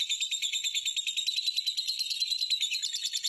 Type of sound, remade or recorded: recorded